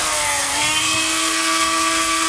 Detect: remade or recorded remade